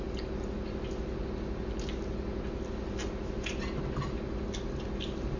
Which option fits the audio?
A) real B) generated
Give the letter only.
A